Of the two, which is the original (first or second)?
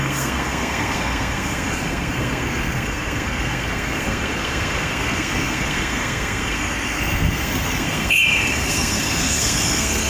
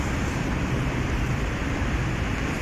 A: second